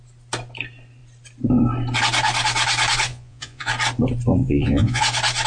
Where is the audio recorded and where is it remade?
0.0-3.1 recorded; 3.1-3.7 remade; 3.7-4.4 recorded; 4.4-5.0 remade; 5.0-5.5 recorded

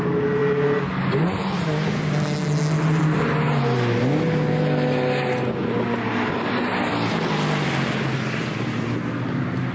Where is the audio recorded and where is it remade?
0.0-9.7 recorded

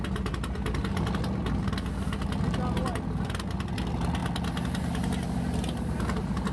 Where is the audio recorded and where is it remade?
0.0-6.5 recorded

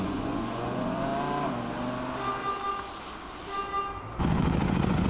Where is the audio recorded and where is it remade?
0.0-1.1 remade; 1.1-4.2 recorded; 4.2-5.1 remade

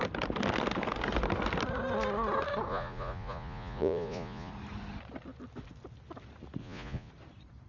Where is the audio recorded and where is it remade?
0.0-2.7 recorded; 2.7-4.5 remade; 4.5-6.6 recorded; 6.6-7.1 remade; 7.1-7.7 recorded